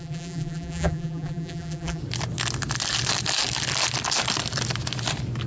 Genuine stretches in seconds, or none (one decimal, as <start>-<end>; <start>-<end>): 2.0-5.5